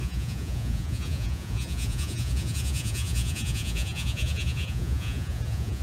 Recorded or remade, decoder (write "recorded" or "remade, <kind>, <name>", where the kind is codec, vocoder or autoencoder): remade, vocoder, Vocos